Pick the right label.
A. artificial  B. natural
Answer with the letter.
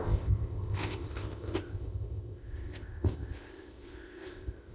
A